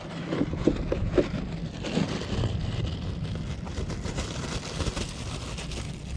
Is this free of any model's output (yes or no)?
yes